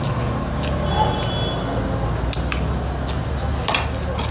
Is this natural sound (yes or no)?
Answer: yes